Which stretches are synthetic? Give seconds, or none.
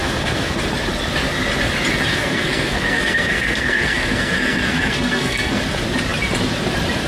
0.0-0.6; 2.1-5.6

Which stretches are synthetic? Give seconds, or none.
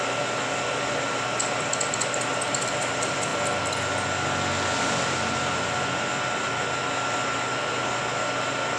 none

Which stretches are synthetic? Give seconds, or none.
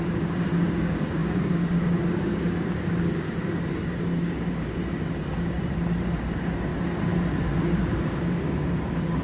0.0-4.8; 6.3-6.7; 7.4-9.2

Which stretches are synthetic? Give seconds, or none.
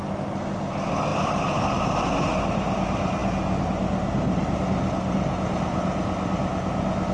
none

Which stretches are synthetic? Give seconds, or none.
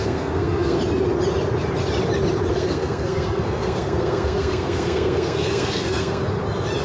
0.0-0.8; 2.5-6.2